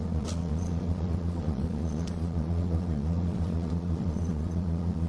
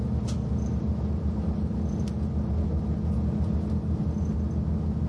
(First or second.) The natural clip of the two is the second